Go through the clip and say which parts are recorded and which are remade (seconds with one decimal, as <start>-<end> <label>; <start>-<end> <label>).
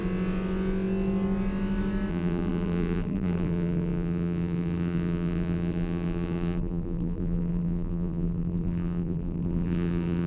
0.0-2.1 recorded; 2.1-10.3 remade